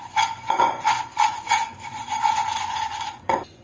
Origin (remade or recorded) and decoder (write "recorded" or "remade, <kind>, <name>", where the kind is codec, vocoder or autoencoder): remade, vocoder, Vocos